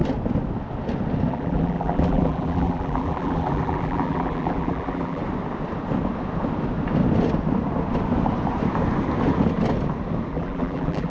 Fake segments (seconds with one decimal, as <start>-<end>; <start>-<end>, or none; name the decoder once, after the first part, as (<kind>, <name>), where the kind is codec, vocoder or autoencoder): 1.3-5.2 (vocoder, BigVGAN v2); 10.3-11.1